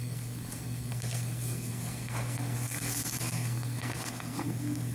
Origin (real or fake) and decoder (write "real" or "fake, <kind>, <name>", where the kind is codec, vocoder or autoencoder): fake, codec, SNAC